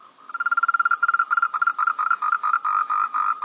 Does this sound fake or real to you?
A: real